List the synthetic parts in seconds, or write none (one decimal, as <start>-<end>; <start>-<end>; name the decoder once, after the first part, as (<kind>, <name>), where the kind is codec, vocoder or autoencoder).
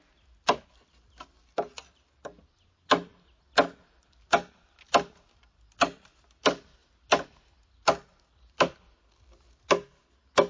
none